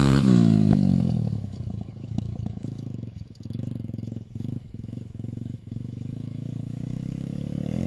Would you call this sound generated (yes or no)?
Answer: yes